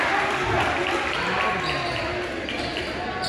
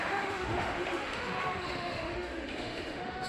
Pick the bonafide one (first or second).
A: first